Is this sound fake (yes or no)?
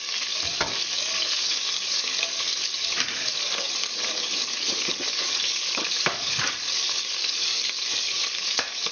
yes